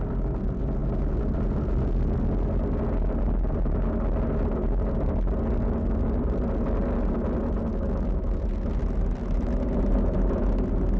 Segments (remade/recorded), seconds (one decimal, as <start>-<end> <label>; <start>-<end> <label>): 0.0-7.7 recorded; 7.7-8.4 remade; 8.4-11.0 recorded